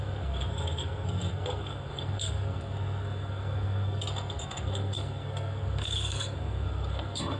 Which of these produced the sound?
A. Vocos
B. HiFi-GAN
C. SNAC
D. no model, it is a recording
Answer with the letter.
C